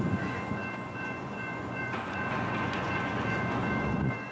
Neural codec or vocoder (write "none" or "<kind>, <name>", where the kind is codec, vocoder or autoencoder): vocoder, Vocos